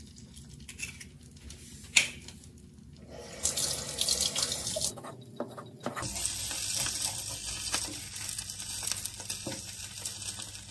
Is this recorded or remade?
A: recorded